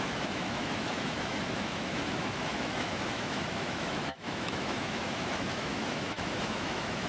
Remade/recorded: remade